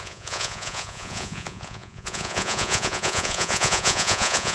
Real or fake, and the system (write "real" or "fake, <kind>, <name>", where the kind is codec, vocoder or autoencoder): fake, vocoder, Vocos